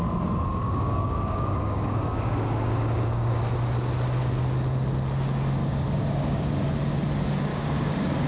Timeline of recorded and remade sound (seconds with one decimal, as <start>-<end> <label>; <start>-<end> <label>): 0.0-0.5 recorded; 0.5-3.4 remade; 3.4-5.6 recorded; 5.6-6.6 remade; 6.6-7.5 recorded; 7.5-8.3 remade